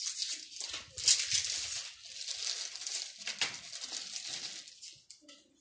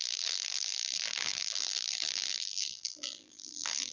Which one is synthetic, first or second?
second